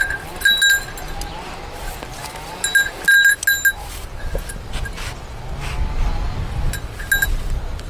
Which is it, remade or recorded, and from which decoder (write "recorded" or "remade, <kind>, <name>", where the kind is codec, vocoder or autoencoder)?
recorded